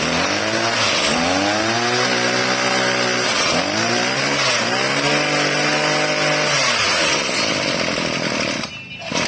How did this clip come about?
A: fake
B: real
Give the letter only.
B